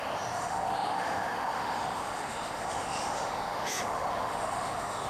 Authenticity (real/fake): fake